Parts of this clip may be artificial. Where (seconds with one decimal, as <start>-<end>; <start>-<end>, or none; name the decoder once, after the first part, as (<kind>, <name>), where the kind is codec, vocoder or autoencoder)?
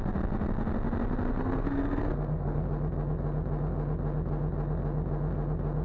1.4-2.6 (codec, SNAC)